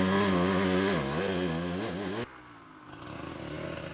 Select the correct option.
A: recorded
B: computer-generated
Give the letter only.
A